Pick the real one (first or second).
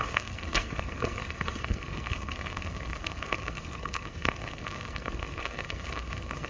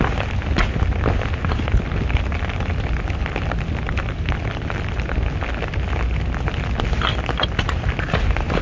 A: second